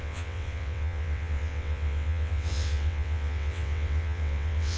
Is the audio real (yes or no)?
no